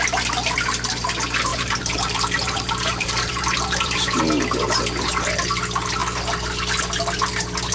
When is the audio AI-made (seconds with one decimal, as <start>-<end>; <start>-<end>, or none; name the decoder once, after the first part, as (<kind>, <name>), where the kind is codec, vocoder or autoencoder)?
1.5-4.2 (vocoder, BigVGAN v2)